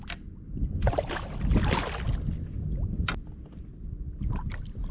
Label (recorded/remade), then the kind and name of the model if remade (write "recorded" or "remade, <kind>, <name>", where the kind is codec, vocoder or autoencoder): recorded